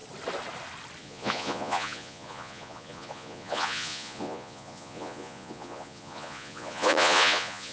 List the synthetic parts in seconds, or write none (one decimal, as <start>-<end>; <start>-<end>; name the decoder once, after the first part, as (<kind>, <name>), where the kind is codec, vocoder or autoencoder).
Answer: 1.0-7.7 (vocoder, Vocos)